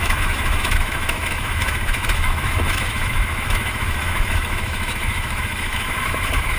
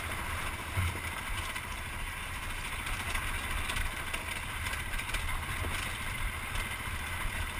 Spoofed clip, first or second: first